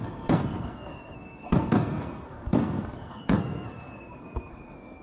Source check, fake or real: fake